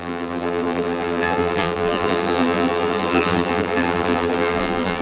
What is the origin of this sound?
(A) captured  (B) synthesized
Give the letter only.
B